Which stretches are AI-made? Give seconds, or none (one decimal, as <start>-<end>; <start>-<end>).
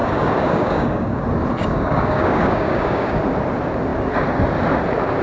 0.0-1.2; 1.6-3.2